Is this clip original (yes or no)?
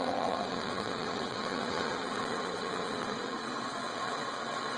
no